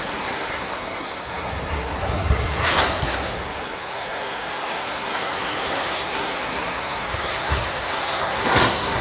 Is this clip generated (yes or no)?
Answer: yes